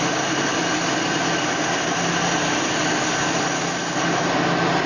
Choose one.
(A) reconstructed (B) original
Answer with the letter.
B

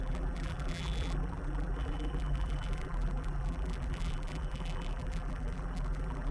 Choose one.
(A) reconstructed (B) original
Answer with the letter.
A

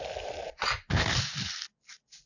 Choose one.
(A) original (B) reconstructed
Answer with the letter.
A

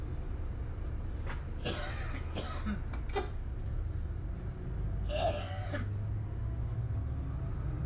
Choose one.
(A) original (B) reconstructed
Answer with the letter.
A